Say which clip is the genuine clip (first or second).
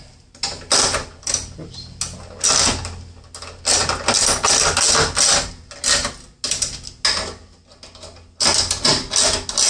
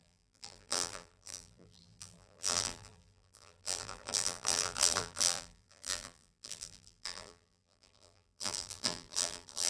first